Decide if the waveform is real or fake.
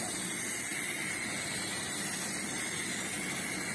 real